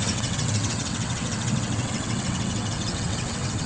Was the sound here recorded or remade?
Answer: remade